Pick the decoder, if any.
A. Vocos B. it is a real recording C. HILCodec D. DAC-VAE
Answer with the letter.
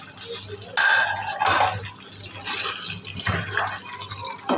B